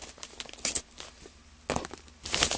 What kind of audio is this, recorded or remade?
recorded